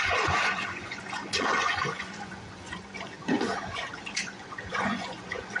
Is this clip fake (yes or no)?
yes